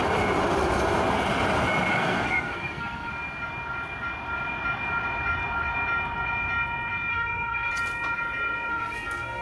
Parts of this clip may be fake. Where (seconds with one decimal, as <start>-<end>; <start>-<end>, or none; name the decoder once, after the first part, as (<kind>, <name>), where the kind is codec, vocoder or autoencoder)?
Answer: 1.9-3.1 (codec, SNAC); 7.1-7.7; 8.7-9.4